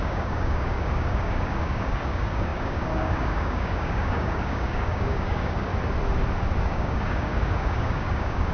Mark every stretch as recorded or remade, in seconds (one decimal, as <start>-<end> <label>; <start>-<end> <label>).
0.0-5.7 remade; 5.7-6.6 recorded; 6.6-8.5 remade